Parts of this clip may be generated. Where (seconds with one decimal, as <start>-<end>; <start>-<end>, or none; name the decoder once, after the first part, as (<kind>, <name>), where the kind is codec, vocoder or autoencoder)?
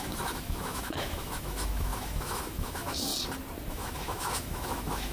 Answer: 0.0-3.1 (autoencoder, DAC-VAE); 3.7-5.1